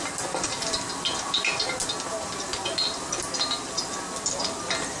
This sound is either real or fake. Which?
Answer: real